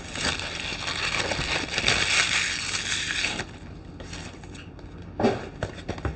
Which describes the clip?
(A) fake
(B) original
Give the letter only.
B